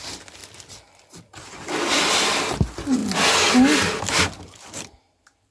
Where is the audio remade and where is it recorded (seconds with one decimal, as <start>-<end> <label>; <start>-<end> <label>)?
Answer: 0.0-5.5 recorded